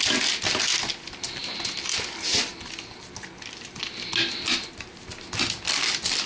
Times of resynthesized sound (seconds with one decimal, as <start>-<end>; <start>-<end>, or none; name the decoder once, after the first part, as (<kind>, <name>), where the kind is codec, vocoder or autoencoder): none